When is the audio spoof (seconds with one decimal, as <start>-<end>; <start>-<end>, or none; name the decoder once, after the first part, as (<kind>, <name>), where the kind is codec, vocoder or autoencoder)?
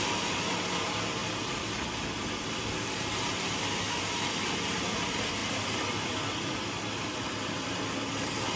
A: 1.2-4.3 (vocoder, BigVGAN v2); 5.4-7.8